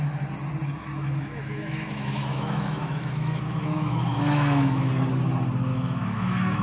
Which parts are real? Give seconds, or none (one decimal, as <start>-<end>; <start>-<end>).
0.0-0.9; 4.9-5.7